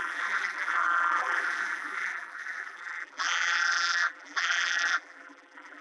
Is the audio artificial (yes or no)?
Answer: yes